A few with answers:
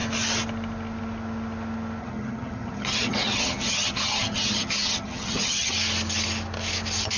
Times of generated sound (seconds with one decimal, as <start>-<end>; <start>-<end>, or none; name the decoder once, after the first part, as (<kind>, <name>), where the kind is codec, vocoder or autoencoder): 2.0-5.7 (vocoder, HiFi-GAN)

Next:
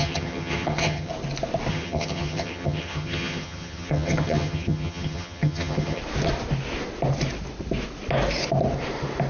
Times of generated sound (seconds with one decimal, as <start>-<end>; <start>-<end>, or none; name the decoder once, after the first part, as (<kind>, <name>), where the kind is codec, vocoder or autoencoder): 0.0-1.1 (vocoder, HiFi-GAN); 1.7-6.0

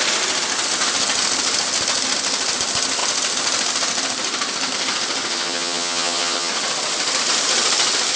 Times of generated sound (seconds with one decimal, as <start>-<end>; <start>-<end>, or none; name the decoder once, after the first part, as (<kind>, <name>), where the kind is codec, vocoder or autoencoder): 5.3-6.5 (vocoder, HiFi-GAN)